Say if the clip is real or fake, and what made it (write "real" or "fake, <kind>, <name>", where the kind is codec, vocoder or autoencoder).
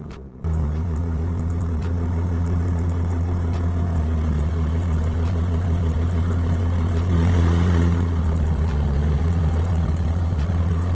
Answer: fake, vocoder, Vocos